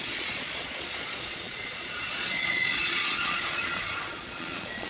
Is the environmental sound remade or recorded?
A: remade